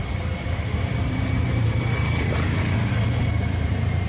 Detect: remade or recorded remade